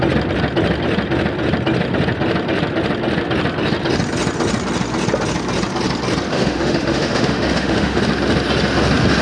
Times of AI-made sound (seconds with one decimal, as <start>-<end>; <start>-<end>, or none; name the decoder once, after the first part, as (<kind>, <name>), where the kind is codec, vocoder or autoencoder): 6.3-8.0 (autoencoder, DAC-VAE)

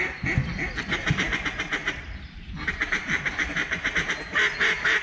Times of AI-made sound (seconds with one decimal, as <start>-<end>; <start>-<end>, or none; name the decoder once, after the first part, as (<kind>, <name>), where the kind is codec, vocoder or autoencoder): 1.8-3.9 (vocoder, BigVGAN v2)

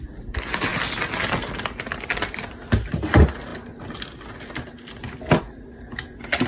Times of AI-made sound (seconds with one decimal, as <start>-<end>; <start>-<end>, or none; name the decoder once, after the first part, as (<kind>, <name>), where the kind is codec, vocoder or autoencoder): none

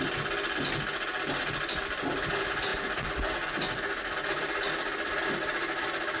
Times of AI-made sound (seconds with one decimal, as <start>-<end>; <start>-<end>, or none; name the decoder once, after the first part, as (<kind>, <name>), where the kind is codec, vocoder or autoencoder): none

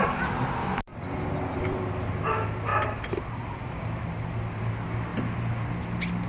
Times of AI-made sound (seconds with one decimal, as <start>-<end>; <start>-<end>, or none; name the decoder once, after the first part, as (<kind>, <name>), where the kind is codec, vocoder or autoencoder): 0.9-2.1 (vocoder, BigVGAN v2)

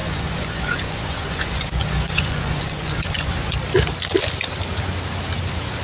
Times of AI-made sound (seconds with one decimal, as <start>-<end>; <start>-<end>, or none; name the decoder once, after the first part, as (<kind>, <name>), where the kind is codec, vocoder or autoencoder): 0.0-3.5 (vocoder, Vocos)